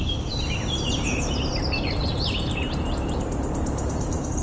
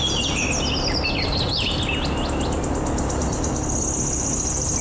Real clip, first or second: second